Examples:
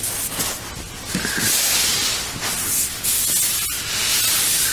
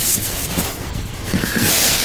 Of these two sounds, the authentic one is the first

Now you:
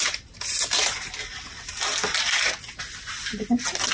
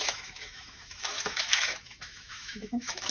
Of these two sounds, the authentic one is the first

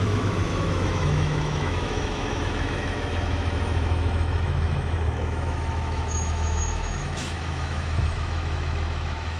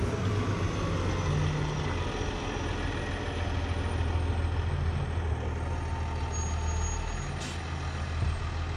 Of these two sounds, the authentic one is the second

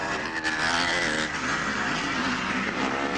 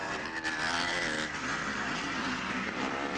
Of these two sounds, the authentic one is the first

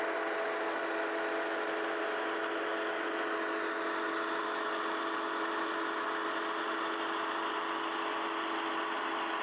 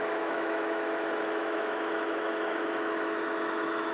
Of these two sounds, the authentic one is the first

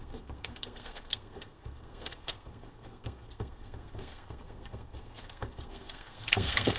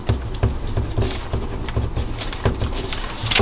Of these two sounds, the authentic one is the second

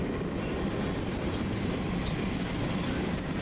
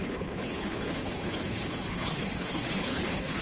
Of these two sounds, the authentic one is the first